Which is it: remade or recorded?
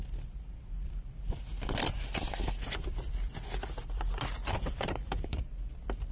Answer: remade